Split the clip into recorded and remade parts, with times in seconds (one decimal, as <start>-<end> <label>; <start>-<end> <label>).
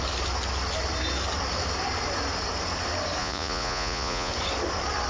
0.0-3.2 recorded; 3.2-4.3 remade; 4.3-5.1 recorded